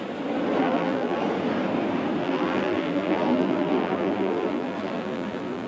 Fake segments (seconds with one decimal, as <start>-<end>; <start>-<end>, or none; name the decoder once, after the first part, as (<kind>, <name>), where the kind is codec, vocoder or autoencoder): 0.6-1.2 (vocoder, BigVGAN v2); 2.2-5.7